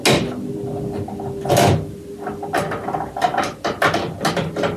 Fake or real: real